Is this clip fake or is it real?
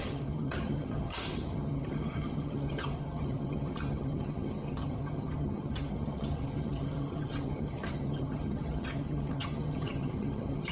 fake